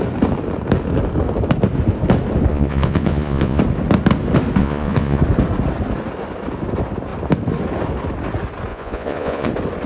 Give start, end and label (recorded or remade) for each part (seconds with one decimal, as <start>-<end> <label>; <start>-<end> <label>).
0.0-2.5 recorded; 2.5-3.6 remade; 3.6-4.6 recorded; 4.6-5.2 remade; 5.2-8.7 recorded; 8.7-9.5 remade; 9.5-9.9 recorded